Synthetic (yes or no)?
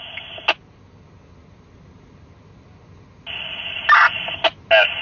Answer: no